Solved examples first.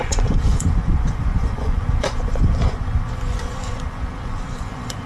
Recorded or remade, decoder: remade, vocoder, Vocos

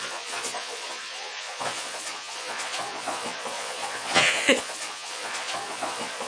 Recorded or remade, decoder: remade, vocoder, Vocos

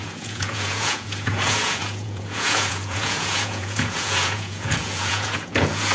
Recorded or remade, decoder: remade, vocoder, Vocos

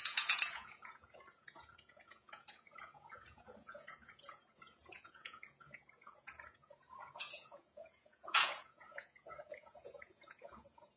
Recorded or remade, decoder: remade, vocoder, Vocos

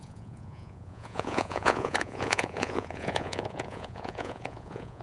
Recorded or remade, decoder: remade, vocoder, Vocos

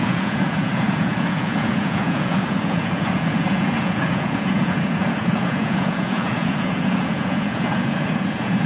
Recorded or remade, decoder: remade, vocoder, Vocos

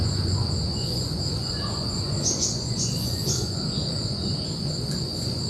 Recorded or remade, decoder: remade, vocoder, Vocos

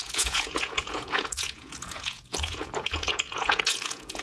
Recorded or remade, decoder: remade, vocoder, Vocos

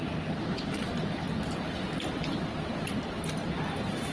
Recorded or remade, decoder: recorded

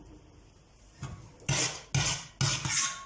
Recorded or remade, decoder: recorded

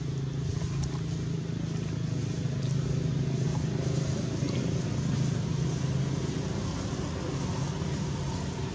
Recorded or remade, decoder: recorded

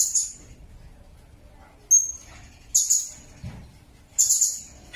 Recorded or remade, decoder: recorded